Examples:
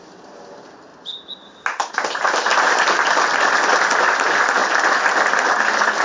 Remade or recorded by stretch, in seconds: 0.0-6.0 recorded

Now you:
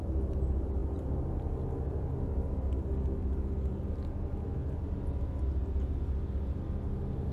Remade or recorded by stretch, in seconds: 0.0-7.3 recorded

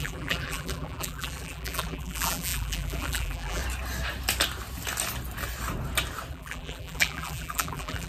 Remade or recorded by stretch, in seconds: 0.0-3.6 remade; 3.6-6.3 recorded; 6.3-8.1 remade

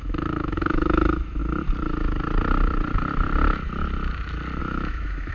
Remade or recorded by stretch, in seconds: 0.0-1.4 remade; 1.4-4.6 recorded; 4.6-5.3 remade

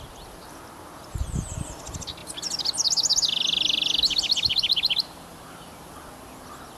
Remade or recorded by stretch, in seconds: 0.0-6.8 recorded

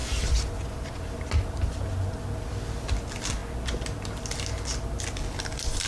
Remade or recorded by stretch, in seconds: 0.0-5.9 recorded

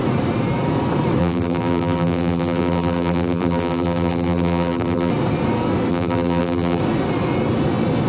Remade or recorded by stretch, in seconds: 0.0-1.2 recorded; 1.2-5.1 remade; 5.1-5.9 recorded; 5.9-6.8 remade; 6.8-8.1 recorded